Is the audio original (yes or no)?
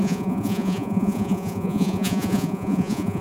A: no